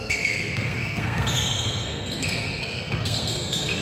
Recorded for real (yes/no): no